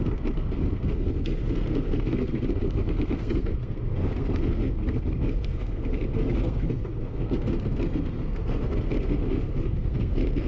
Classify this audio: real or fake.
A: fake